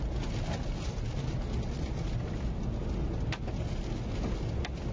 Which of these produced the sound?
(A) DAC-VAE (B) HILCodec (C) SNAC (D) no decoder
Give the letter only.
D